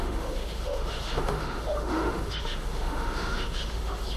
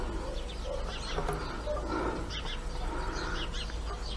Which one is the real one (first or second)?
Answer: second